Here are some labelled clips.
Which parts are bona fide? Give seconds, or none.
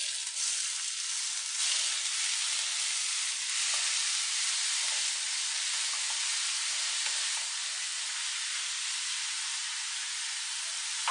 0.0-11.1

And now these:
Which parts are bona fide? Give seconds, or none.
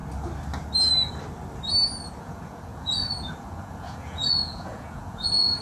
0.0-2.2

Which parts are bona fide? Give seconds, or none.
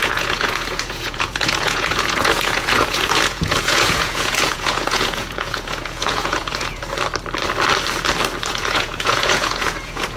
6.8-8.5